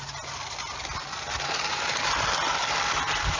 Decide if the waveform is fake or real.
real